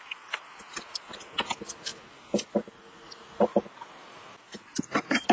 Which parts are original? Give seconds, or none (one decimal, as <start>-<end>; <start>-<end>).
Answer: 0.0-5.3